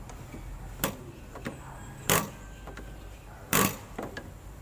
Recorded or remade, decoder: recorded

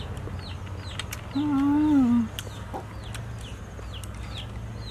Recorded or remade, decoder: recorded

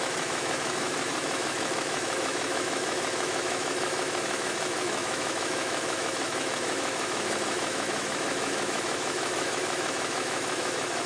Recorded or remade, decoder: remade, autoencoder, DAC-VAE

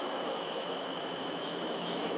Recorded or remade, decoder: remade, autoencoder, DAC-VAE